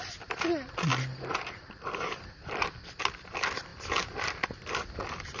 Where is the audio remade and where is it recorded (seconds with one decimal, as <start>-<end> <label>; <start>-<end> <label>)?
0.0-0.9 recorded; 0.9-2.5 remade; 2.5-5.4 recorded